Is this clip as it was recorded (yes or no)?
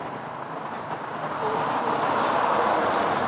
no